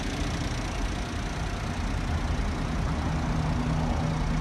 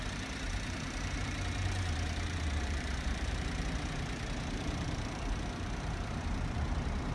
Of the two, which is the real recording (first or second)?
first